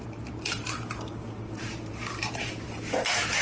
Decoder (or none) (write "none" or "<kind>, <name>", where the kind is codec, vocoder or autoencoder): vocoder, BigVGAN v2